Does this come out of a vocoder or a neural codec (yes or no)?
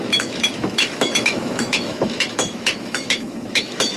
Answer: yes